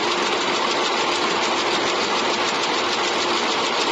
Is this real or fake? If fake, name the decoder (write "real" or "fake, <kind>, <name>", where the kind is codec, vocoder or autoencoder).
real